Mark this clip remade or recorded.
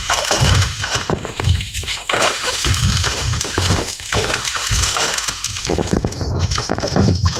remade